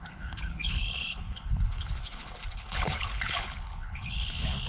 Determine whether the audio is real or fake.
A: fake